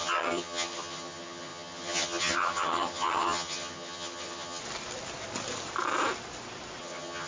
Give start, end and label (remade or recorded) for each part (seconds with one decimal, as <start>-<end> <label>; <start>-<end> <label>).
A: 0.0-4.6 remade; 4.6-6.8 recorded; 6.8-7.3 remade